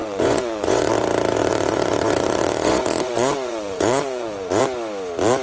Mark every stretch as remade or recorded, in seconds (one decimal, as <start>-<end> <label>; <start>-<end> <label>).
0.0-0.9 remade; 0.9-1.4 recorded; 1.4-4.6 remade; 4.6-5.4 recorded